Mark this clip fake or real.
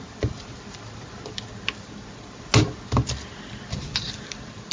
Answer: real